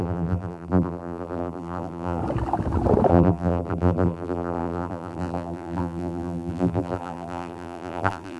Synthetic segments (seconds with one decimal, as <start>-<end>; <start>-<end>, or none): 0.0-2.2; 3.1-8.4